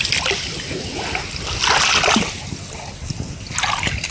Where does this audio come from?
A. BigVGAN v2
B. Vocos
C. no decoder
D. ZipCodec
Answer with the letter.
C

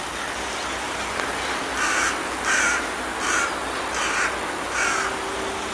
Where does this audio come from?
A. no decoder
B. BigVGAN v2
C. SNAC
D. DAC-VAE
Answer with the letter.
A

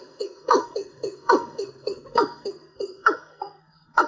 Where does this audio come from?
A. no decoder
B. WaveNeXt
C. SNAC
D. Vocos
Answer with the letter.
C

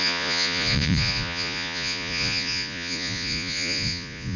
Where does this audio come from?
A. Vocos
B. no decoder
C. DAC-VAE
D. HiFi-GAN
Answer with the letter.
A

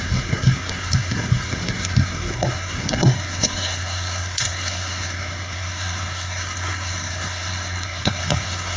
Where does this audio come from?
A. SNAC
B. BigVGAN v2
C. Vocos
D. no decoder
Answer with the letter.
A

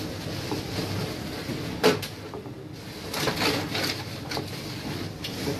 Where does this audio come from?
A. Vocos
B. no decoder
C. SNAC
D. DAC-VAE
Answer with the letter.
B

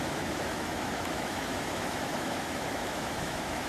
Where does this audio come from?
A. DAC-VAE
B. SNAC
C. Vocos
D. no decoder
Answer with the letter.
A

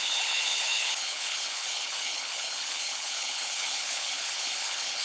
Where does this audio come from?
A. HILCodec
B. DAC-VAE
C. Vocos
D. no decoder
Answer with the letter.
A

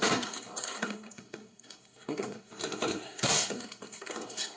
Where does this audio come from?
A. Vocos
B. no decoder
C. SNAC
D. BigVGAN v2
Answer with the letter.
C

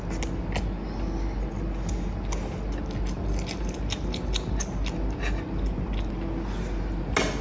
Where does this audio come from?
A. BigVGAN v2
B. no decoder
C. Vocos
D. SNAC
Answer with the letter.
B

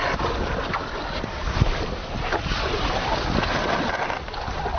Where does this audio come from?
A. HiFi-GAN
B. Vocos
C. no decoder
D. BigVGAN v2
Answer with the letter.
C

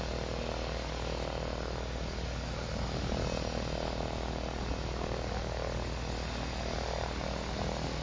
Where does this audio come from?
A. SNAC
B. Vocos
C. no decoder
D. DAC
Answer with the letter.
C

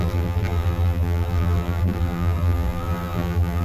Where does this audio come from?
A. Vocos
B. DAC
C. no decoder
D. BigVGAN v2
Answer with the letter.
D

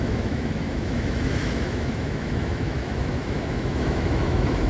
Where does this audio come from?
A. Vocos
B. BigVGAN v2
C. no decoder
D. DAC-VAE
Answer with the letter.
D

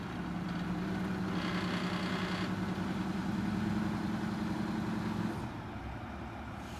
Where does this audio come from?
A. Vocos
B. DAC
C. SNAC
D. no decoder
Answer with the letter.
D